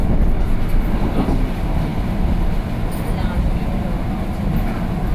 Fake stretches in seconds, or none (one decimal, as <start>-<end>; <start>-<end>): 0.0-0.9